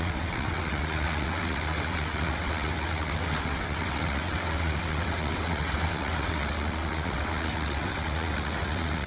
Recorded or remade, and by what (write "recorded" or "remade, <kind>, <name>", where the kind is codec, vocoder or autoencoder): remade, vocoder, WaveNeXt